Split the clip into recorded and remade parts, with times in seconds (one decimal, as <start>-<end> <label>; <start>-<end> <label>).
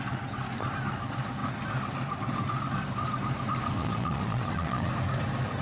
0.0-3.8 recorded; 3.8-4.9 remade; 4.9-5.6 recorded